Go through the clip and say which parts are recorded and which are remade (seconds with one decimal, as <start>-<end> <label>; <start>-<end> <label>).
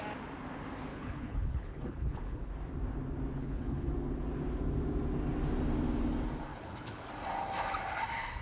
0.0-0.9 recorded; 0.9-2.5 remade; 2.5-3.4 recorded; 3.4-3.9 remade; 3.9-6.5 recorded; 6.5-7.1 remade; 7.1-8.4 recorded